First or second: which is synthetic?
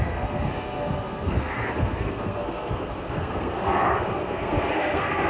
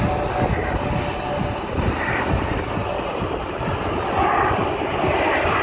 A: first